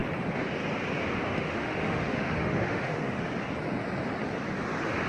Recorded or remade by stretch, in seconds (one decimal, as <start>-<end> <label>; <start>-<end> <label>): 0.0-1.3 recorded; 1.3-3.3 remade; 3.3-5.1 recorded